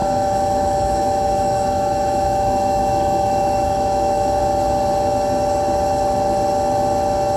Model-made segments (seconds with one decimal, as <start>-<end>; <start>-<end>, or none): 0.0-4.4